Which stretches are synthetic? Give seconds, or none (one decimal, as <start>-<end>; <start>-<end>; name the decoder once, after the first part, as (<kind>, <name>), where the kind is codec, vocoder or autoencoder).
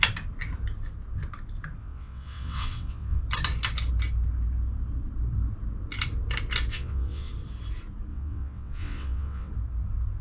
1.8-3.2 (vocoder, WaveNeXt); 6.7-7.3; 8.1-9.5